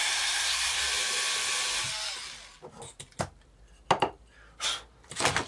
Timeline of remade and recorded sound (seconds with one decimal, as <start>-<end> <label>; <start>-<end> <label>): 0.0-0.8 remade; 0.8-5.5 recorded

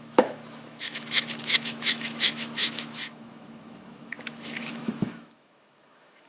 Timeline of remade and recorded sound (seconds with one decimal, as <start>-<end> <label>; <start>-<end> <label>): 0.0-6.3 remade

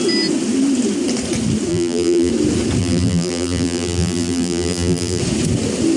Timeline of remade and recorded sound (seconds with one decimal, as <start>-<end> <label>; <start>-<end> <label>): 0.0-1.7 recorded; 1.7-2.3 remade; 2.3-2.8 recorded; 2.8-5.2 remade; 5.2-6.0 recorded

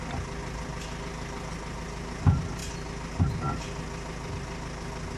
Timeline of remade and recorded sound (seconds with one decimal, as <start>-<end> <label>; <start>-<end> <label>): 0.0-5.2 recorded

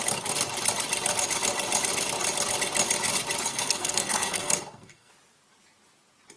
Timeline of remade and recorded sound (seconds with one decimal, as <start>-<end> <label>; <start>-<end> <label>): 0.0-3.5 recorded; 3.5-5.1 remade; 5.1-6.4 recorded

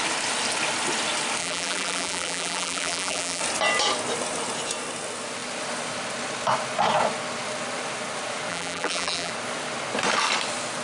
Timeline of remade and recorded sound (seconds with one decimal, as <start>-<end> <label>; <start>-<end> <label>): 0.0-1.4 recorded; 1.4-3.4 remade; 3.4-8.5 recorded; 8.5-9.3 remade; 9.3-10.8 recorded

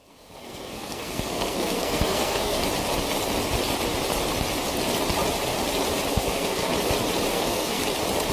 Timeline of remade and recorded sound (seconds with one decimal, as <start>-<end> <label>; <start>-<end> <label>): 0.0-2.6 remade; 2.6-6.1 recorded; 6.1-6.7 remade; 6.7-7.3 recorded; 7.3-7.8 remade; 7.8-8.3 recorded

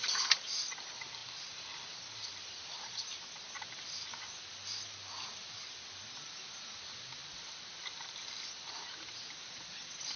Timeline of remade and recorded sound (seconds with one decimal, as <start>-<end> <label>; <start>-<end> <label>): 0.0-10.2 recorded